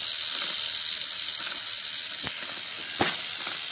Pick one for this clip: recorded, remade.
recorded